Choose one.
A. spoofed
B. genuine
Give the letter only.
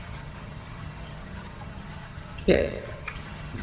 A